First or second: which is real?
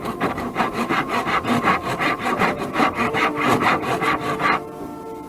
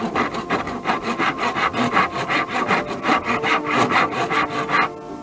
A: second